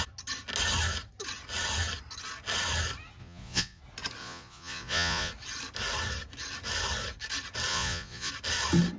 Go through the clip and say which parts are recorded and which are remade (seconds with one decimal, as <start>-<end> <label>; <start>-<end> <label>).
0.0-3.2 recorded; 3.2-3.8 remade; 3.8-4.2 recorded; 4.2-5.3 remade; 5.3-7.7 recorded; 7.7-8.3 remade; 8.3-9.0 recorded